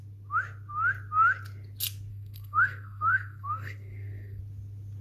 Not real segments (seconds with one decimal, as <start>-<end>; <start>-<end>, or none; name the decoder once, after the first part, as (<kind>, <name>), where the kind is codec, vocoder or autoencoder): 2.1-4.4 (codec, SNAC)